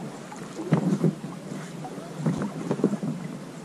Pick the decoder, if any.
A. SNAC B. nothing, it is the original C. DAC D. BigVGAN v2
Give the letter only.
B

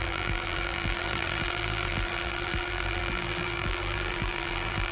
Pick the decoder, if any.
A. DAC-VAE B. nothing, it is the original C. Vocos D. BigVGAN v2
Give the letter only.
D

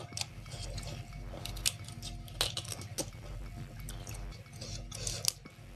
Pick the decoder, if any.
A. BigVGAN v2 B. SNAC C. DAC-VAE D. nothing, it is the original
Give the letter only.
D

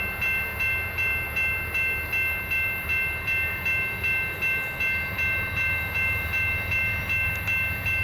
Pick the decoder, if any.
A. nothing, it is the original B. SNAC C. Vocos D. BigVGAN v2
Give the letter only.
A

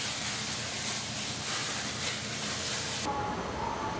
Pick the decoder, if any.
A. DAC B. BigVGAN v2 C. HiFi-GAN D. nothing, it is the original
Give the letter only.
D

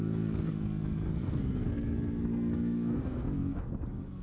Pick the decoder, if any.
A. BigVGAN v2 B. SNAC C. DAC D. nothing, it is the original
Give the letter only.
B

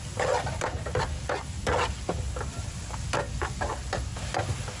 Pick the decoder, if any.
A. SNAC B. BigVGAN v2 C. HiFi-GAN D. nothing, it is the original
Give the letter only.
D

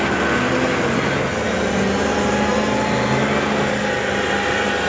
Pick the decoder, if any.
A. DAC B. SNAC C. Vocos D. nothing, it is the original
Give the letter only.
D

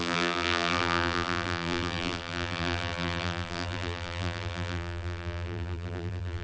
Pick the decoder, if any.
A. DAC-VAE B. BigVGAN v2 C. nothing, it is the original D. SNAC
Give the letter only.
B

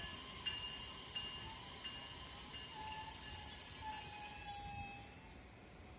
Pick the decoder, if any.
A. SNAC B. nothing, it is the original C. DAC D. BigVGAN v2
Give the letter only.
B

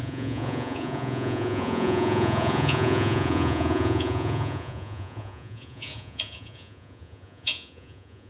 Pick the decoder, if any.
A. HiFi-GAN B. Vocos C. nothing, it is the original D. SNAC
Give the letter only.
B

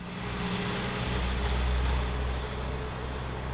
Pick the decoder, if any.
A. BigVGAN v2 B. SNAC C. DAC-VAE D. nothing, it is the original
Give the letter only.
D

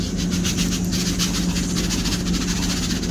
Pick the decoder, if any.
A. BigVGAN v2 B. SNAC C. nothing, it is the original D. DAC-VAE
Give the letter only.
C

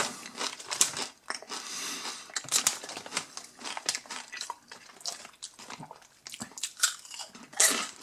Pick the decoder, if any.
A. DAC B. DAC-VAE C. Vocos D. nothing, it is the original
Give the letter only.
D